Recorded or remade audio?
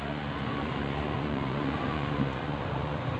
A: remade